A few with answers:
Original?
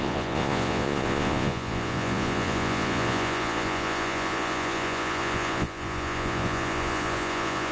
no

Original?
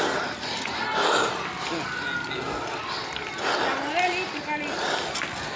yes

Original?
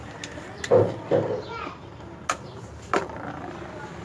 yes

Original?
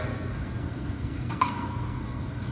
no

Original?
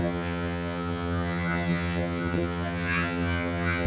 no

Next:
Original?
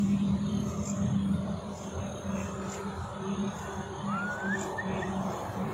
yes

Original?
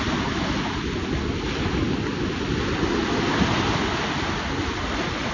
yes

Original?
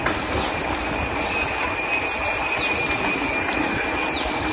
yes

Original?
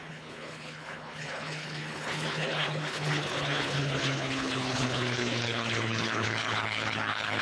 no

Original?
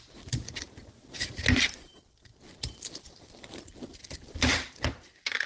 yes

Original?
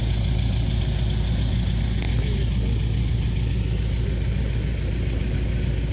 yes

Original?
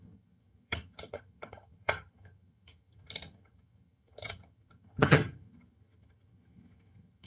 no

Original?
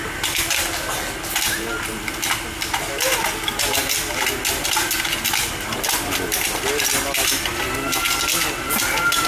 yes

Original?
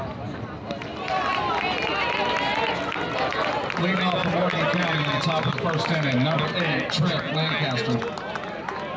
yes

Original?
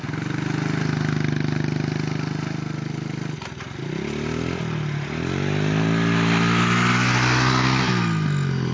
yes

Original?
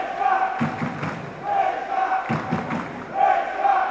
yes